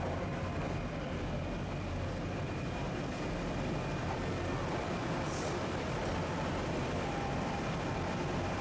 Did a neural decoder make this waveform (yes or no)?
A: yes